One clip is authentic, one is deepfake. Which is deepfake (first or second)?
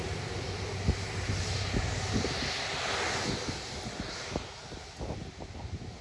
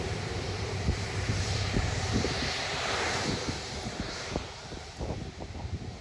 second